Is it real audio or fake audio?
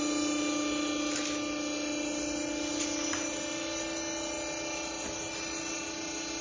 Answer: real